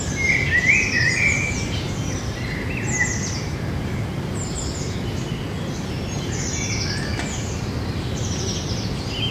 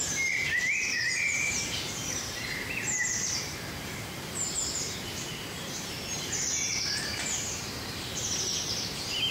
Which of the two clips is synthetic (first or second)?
second